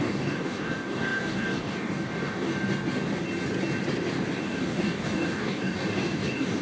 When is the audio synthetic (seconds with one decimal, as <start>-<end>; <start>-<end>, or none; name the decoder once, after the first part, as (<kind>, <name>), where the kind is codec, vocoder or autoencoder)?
0.0-2.5 (codec, DAC); 4.3-6.6